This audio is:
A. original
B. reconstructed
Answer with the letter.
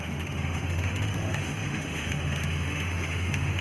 B